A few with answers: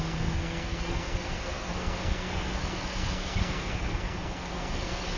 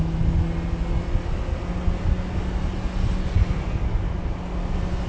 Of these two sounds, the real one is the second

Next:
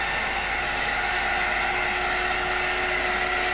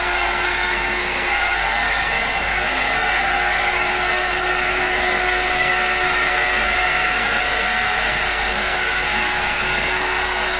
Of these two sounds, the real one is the first